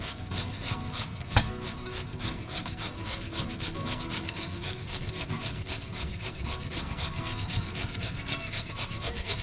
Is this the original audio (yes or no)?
no